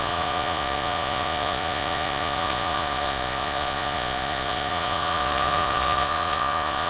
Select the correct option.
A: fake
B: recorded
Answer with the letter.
A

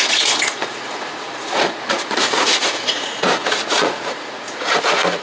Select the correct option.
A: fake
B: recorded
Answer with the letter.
A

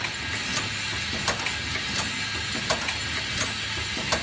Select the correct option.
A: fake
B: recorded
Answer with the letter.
B